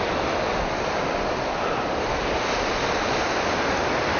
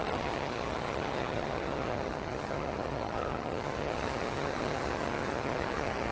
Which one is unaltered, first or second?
first